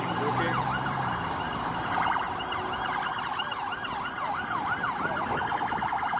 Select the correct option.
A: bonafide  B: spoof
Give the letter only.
A